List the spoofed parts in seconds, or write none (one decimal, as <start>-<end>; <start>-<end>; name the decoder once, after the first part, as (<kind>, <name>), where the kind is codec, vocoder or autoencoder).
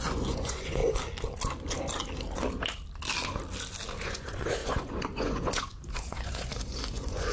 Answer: 0.0-0.8 (vocoder, Vocos); 4.0-7.3